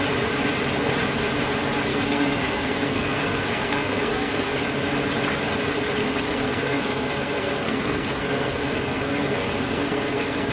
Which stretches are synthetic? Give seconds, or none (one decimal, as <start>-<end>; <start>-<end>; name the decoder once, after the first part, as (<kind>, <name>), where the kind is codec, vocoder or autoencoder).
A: 1.9-4.6 (codec, SNAC); 6.0-10.5

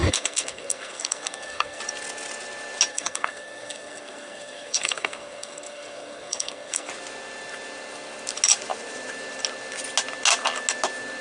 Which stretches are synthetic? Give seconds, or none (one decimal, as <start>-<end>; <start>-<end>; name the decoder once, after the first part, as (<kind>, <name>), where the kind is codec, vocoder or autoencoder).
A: 0.0-1.8 (codec, SNAC); 2.9-6.9

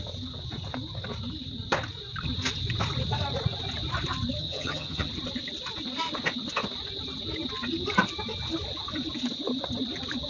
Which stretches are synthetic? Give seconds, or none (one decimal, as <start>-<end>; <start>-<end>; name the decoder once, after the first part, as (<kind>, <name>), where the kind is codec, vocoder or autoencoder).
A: 4.4-5.1 (vocoder, HiFi-GAN)

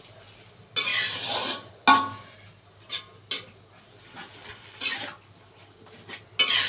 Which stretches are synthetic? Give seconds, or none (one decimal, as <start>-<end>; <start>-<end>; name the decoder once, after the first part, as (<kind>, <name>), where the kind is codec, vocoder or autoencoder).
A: 0.9-1.7 (vocoder, BigVGAN v2); 4.9-6.2

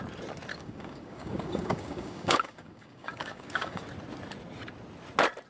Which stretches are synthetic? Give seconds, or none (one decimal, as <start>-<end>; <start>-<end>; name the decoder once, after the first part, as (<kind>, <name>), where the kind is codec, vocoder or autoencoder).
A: 0.5-3.8 (codec, DAC)

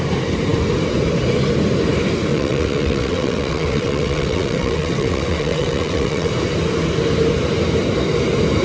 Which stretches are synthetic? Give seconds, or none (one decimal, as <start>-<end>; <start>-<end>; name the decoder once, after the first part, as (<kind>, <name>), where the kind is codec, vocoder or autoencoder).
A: 2.3-6.3 (vocoder, WaveNeXt)

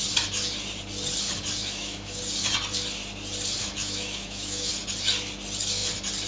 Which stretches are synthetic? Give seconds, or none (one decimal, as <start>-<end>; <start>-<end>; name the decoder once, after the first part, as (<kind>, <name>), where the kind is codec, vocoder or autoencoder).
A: 1.6-2.2 (autoencoder, DAC-VAE); 3.6-4.7

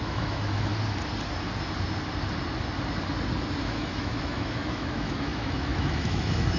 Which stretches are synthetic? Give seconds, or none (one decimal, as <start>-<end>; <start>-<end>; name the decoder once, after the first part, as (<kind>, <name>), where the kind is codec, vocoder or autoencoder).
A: 0.0-0.7 (autoencoder, DAC-VAE); 3.6-6.6